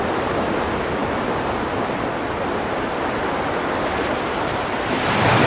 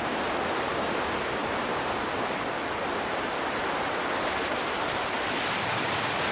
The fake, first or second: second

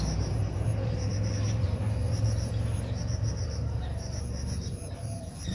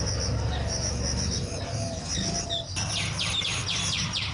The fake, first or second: first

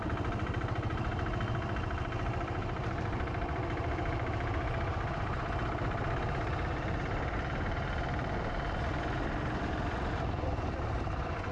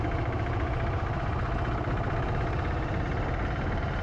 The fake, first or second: first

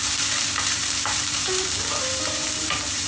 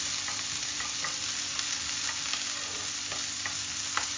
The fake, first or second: first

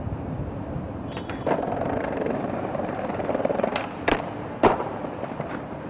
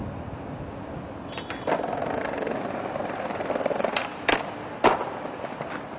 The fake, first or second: first